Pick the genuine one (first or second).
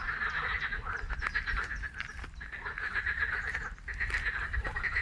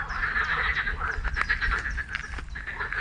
second